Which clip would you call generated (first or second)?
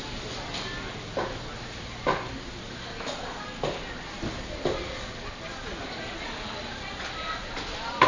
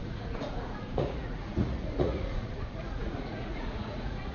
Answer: second